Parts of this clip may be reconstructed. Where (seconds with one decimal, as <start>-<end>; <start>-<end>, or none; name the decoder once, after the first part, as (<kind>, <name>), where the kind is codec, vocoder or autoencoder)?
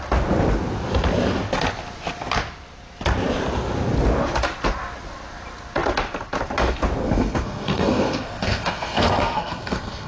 7.0-10.1 (codec, SNAC)